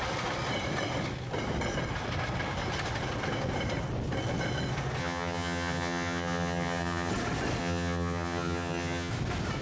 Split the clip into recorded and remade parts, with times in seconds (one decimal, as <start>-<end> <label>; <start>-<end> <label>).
0.0-5.0 recorded; 5.0-7.1 remade; 7.1-7.6 recorded; 7.6-9.1 remade; 9.1-9.6 recorded